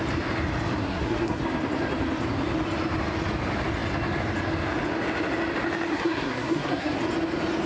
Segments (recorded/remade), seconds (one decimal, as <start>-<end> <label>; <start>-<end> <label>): 0.0-0.8 recorded; 0.8-1.4 remade; 1.4-5.9 recorded; 5.9-7.0 remade; 7.0-7.7 recorded